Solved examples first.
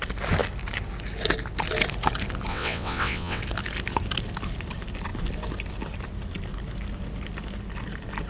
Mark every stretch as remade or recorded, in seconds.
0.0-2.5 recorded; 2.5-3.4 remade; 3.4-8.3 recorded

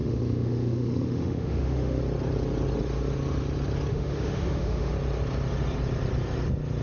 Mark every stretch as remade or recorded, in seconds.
0.0-2.0 remade; 2.0-3.9 recorded; 3.9-4.9 remade; 4.9-6.8 recorded

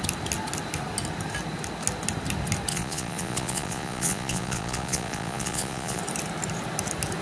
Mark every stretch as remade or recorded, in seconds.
0.0-2.7 recorded; 2.7-6.0 remade; 6.0-7.2 recorded

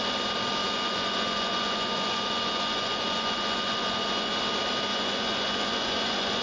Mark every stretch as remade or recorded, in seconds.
0.0-0.6 recorded; 0.6-4.4 remade; 4.4-4.9 recorded; 4.9-6.4 remade

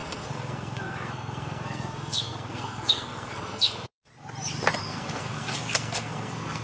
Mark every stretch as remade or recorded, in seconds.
0.0-4.1 remade; 4.1-4.8 recorded; 4.8-6.6 remade

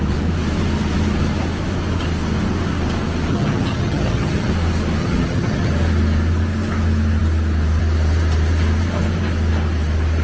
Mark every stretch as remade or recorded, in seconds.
0.0-3.3 recorded; 3.3-4.5 remade; 4.5-5.0 recorded; 5.0-5.7 remade; 5.7-10.2 recorded

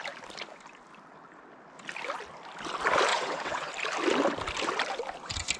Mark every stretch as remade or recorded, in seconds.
0.0-3.1 recorded; 3.1-3.7 remade; 3.7-5.6 recorded